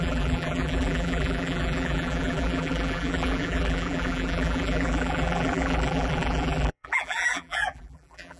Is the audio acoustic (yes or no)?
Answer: no